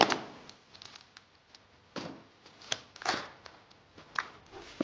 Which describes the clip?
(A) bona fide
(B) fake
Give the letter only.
A